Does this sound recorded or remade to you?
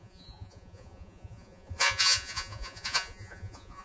remade